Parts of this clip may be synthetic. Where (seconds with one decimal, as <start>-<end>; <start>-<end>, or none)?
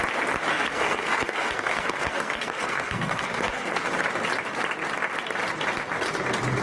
0.5-3.9